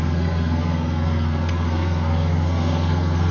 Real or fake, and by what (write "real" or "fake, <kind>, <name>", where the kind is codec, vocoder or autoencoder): fake, codec, SNAC